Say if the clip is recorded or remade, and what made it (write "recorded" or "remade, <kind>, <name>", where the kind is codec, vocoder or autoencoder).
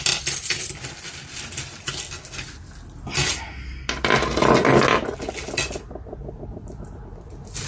recorded